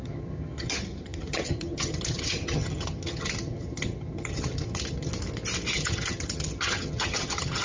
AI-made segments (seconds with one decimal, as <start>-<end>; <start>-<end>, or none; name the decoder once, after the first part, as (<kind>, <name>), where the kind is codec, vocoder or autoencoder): 0.0-5.1 (vocoder, HiFi-GAN); 5.7-7.6